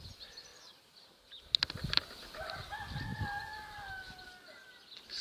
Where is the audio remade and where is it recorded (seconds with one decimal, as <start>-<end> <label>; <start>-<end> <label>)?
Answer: 0.0-5.2 recorded